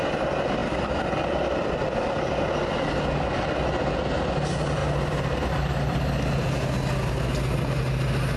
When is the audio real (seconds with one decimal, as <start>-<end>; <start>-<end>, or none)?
0.0-0.6; 2.4-4.8; 6.5-8.4